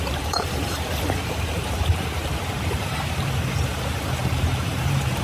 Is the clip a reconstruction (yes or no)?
yes